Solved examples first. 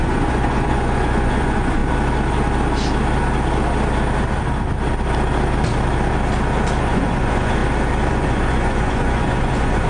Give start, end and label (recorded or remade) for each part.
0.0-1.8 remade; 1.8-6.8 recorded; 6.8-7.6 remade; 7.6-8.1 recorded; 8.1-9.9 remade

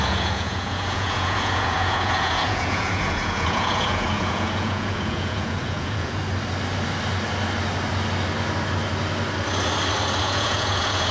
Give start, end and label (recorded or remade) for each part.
0.0-6.2 remade; 6.2-10.2 recorded; 10.2-11.1 remade

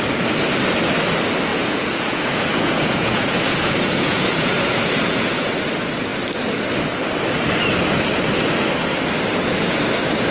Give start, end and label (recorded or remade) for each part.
0.0-1.5 recorded; 1.5-5.5 remade; 5.5-10.3 recorded

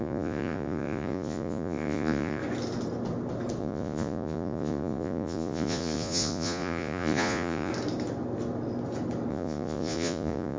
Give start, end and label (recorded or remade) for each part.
0.0-2.4 remade; 2.4-3.6 recorded; 3.6-7.7 remade; 7.7-9.3 recorded; 9.3-10.6 remade

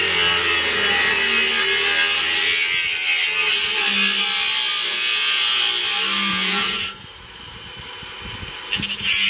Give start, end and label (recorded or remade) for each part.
0.0-4.9 recorded; 4.9-5.6 remade; 5.6-6.3 recorded; 6.3-7.0 remade; 7.0-9.3 recorded

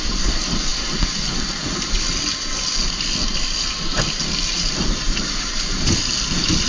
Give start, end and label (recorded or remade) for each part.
0.0-6.7 recorded

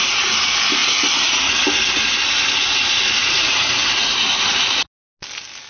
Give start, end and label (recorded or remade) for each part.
0.0-3.2 recorded; 3.2-3.7 remade; 3.7-5.7 recorded

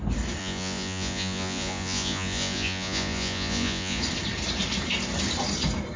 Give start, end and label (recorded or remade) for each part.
0.0-0.4 recorded; 0.4-4.0 remade; 4.0-6.0 recorded